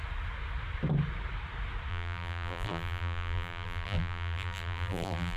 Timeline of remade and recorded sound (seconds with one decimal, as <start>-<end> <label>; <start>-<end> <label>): 0.0-1.9 recorded; 1.9-5.4 remade